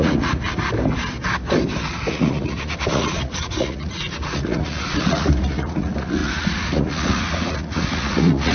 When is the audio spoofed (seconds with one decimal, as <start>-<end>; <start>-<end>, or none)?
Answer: 0.0-0.5; 2.1-8.5